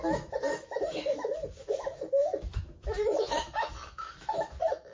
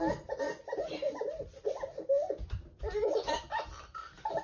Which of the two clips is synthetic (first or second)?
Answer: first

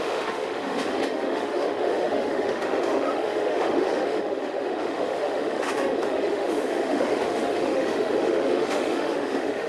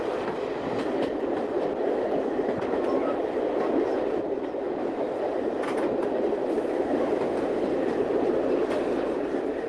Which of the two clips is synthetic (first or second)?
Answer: first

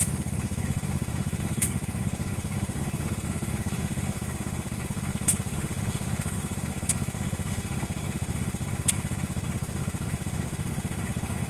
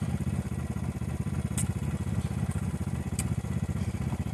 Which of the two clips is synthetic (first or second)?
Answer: first